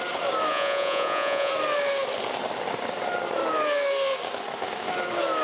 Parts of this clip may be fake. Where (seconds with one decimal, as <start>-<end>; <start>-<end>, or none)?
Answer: 0.5-1.5